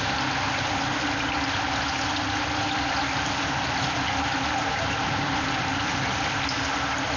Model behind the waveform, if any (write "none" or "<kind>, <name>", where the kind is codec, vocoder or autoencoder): none